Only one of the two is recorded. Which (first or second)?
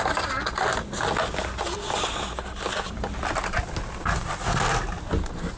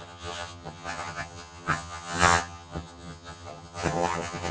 first